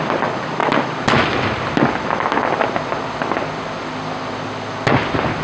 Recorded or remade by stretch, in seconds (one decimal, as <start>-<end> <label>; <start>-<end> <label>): 0.0-5.4 recorded